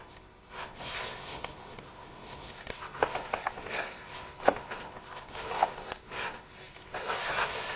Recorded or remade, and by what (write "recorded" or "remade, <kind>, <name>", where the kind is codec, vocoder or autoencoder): remade, codec, SNAC